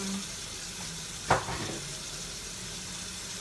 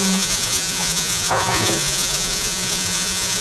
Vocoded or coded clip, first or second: second